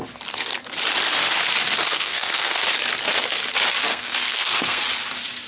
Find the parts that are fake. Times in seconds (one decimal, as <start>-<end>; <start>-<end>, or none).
1.9-2.6; 3.9-4.8